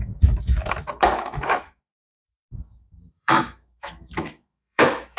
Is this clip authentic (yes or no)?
no